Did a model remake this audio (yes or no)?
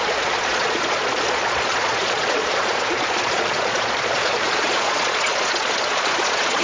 yes